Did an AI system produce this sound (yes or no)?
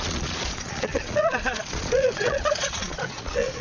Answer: yes